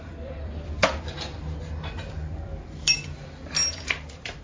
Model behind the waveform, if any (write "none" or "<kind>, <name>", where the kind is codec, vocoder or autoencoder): vocoder, BigVGAN v2